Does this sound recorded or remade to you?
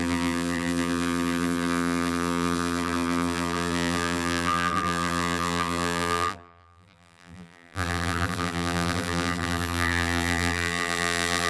remade